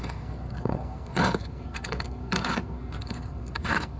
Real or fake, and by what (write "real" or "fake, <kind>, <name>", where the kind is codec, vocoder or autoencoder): fake, codec, SNAC